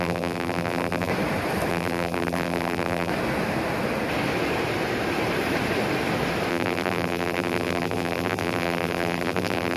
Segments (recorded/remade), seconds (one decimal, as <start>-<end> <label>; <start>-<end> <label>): 0.0-1.1 remade; 1.1-1.7 recorded; 1.7-3.1 remade; 3.1-6.5 recorded; 6.5-9.8 remade